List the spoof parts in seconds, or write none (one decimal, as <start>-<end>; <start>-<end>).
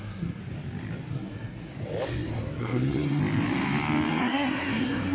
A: 0.0-0.4; 1.1-1.7; 2.6-3.2; 4.1-5.1